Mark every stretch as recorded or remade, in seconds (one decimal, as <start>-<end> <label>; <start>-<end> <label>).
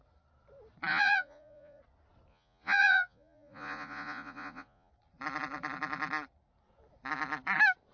0.0-0.9 recorded; 0.9-1.8 remade; 1.8-2.3 recorded; 2.3-4.9 remade; 4.9-7.9 recorded